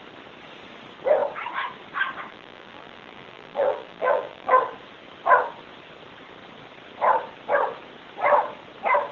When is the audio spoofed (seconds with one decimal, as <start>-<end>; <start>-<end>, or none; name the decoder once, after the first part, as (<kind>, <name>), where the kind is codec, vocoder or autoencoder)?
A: 2.3-4.6 (vocoder, BigVGAN v2)